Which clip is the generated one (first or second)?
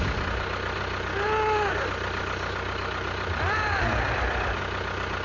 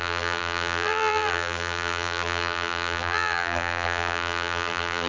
second